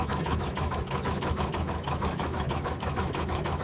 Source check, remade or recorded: remade